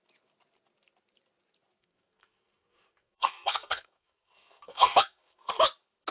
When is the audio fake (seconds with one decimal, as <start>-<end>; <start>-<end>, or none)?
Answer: 1.8-5.5